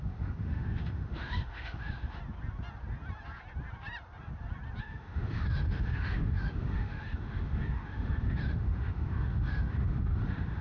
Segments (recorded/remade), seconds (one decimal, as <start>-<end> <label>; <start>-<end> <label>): 0.0-2.2 remade; 2.2-4.8 recorded; 4.8-10.6 remade